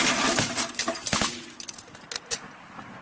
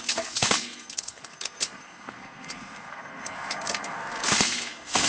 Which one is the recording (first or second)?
first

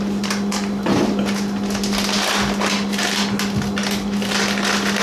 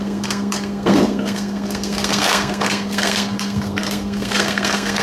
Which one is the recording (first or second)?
first